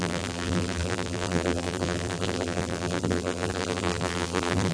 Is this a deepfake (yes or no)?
yes